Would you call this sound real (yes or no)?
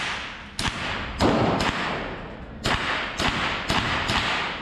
yes